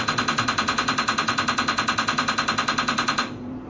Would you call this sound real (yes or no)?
no